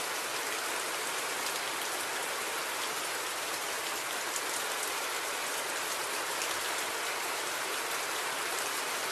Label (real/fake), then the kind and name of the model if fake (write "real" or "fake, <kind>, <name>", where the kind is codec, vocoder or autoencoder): real